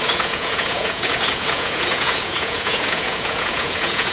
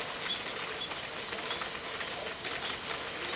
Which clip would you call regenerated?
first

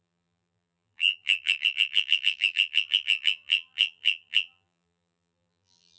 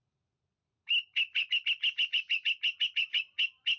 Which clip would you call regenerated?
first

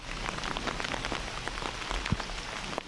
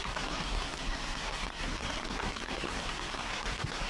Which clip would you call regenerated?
second